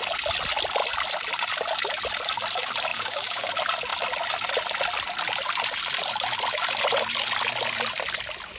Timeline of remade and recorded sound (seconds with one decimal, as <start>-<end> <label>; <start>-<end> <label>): 0.0-2.9 recorded; 2.9-3.5 remade; 3.5-8.6 recorded